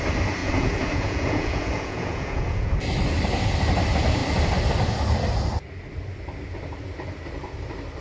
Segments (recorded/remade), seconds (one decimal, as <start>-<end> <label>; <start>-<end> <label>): 0.0-0.4 recorded; 0.4-2.7 remade; 2.7-8.0 recorded